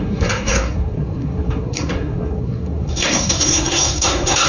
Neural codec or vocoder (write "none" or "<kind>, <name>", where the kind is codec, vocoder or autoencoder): codec, SNAC